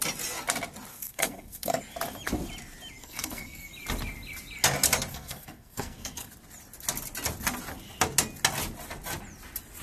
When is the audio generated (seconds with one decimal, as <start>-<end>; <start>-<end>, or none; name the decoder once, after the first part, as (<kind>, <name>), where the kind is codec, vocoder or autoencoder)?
0.9-1.8 (codec, SNAC); 3.0-3.7; 5.1-6.3